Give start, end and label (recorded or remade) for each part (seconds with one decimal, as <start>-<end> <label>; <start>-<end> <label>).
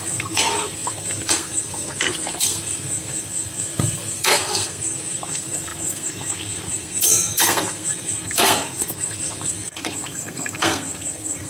0.0-11.5 remade